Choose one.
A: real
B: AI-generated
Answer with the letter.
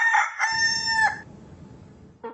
B